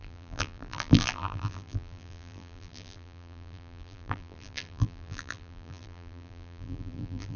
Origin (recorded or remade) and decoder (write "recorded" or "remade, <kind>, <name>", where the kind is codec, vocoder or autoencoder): remade, vocoder, BigVGAN v2